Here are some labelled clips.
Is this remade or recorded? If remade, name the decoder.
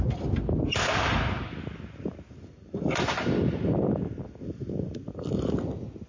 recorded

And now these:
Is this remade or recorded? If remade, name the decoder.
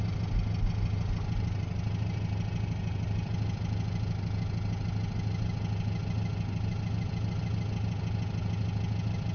recorded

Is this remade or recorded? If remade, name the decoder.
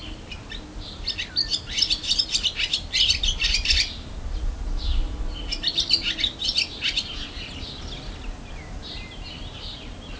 recorded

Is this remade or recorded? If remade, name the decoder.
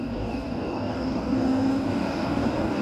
remade, codec, DAC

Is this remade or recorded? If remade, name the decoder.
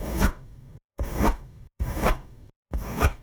remade, codec, DAC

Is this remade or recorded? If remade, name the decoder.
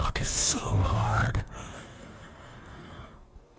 remade, codec, DAC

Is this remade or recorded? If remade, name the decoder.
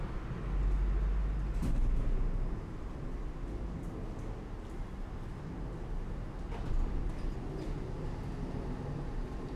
recorded